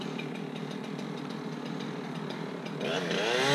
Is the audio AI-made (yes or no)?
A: no